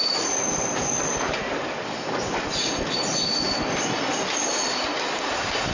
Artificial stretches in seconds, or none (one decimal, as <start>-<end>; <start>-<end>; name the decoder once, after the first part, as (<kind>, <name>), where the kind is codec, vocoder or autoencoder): none